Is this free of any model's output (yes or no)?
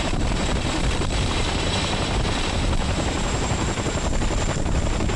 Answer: no